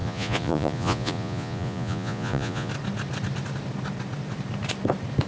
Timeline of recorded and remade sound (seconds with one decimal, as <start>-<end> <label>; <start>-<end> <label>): 0.0-2.7 remade; 2.7-5.3 recorded